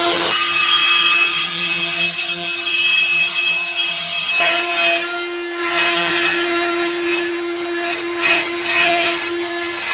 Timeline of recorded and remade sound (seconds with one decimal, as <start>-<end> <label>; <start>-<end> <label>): 0.0-4.7 remade; 4.7-5.6 recorded; 5.6-9.9 remade